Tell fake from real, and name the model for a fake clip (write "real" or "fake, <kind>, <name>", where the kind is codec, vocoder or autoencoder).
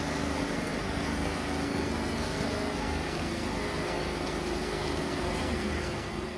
fake, codec, SNAC